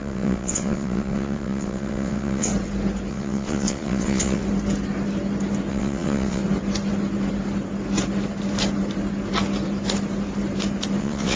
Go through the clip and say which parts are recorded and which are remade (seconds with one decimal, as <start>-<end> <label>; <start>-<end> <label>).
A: 0.0-2.5 remade; 2.5-3.1 recorded; 3.1-4.4 remade; 4.4-5.7 recorded; 5.7-6.4 remade; 6.4-11.0 recorded; 11.0-11.4 remade